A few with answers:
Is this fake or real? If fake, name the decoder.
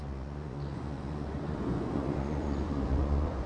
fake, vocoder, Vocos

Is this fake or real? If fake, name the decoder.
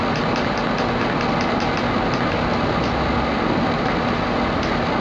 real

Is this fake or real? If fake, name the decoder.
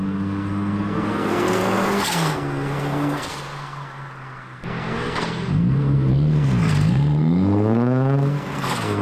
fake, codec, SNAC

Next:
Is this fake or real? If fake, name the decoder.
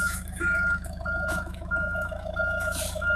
fake, autoencoder, DAC-VAE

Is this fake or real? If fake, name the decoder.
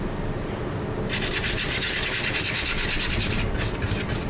real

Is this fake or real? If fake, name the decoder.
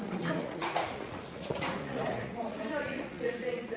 fake, vocoder, Vocos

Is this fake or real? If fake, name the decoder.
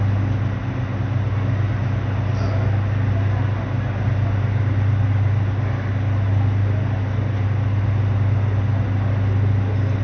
real